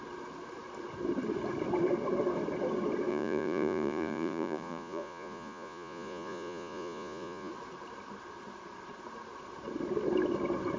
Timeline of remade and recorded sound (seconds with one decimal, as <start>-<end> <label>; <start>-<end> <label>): 0.0-3.1 recorded; 3.1-7.5 remade; 7.5-10.8 recorded